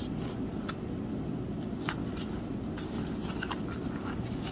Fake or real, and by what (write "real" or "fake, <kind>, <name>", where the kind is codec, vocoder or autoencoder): real